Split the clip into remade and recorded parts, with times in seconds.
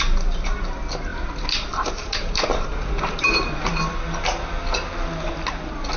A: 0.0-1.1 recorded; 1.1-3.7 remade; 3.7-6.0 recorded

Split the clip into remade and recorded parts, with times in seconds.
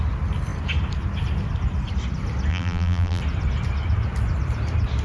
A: 0.0-2.5 recorded; 2.5-3.2 remade; 3.2-5.0 recorded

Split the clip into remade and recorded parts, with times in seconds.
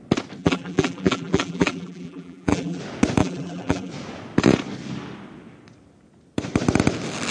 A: 0.0-0.4 recorded; 0.4-2.8 remade; 2.8-3.2 recorded; 3.2-3.9 remade; 3.9-7.3 recorded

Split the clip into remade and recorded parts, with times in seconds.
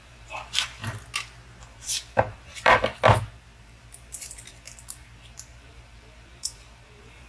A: 0.0-0.8 remade; 0.8-1.6 recorded; 1.6-2.9 remade; 2.9-3.6 recorded; 3.6-7.3 remade